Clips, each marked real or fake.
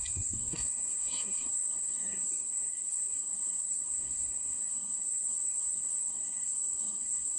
fake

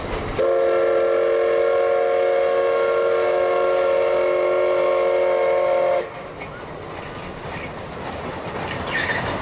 real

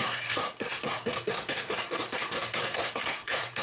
fake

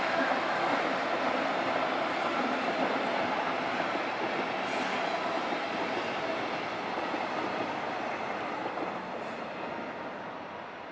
real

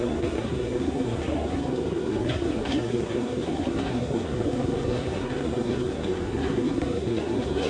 fake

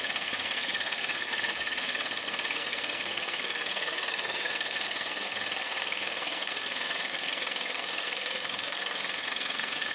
fake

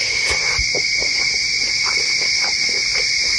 real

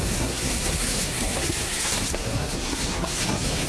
fake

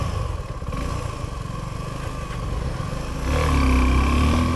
real